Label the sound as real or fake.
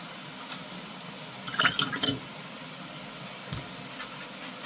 real